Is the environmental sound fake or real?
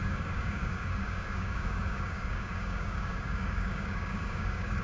fake